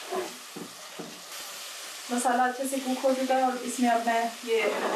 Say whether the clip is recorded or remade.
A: recorded